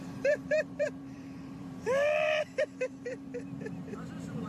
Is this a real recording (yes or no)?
no